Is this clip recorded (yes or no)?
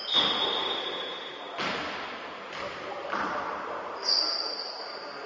yes